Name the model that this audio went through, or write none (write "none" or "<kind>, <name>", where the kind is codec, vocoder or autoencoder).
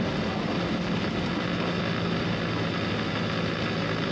none